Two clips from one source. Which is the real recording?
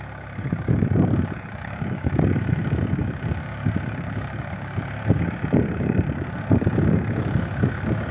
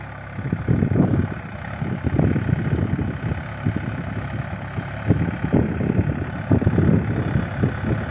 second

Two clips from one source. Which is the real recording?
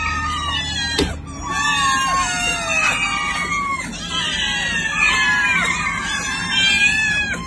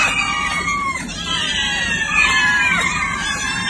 first